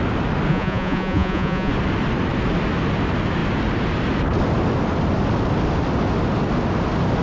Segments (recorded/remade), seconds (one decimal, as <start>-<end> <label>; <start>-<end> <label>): 0.0-0.5 recorded; 0.5-1.7 remade; 1.7-7.2 recorded